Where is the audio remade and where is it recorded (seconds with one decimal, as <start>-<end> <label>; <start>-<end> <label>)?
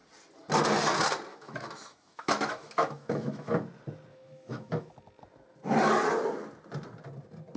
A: 0.0-1.3 recorded; 1.3-3.5 remade; 3.5-4.1 recorded; 4.1-4.9 remade; 4.9-7.6 recorded